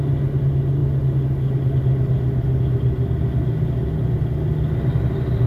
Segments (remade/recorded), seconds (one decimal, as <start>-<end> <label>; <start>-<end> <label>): 0.0-5.5 recorded